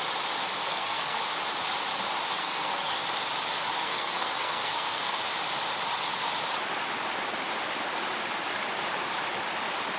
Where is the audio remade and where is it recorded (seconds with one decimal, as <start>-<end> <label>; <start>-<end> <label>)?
0.0-0.6 recorded; 0.6-1.2 remade; 1.2-2.4 recorded; 2.4-3.0 remade; 3.0-3.8 recorded; 3.8-5.2 remade; 5.2-10.0 recorded